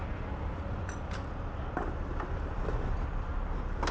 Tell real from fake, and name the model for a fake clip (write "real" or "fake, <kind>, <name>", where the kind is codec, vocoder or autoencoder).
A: real